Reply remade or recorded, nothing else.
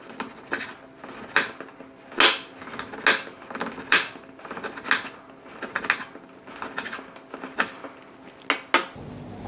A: recorded